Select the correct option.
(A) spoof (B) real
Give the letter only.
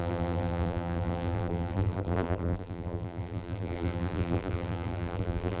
A